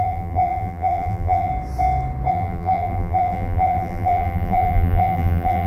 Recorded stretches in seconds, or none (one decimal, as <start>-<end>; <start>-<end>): 1.5-2.3